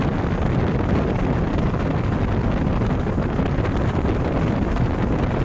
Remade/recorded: recorded